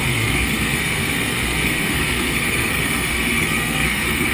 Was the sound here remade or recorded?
remade